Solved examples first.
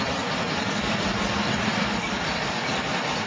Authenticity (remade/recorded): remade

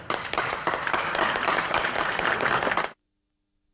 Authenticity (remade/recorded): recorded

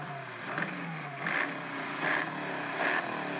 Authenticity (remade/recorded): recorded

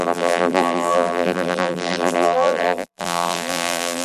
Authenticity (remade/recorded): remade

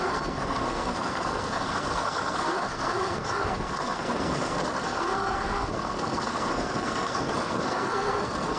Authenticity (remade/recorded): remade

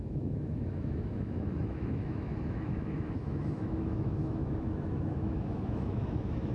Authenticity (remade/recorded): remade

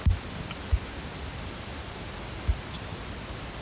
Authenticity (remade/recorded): recorded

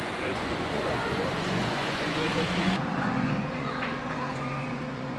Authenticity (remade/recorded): remade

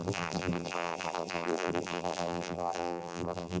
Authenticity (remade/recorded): remade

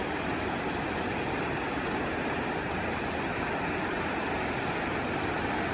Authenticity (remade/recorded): recorded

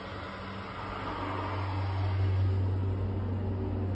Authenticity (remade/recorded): recorded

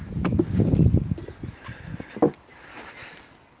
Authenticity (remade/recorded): recorded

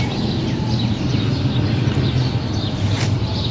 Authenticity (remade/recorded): recorded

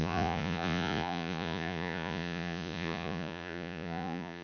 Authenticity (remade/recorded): remade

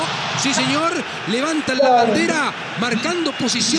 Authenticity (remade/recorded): recorded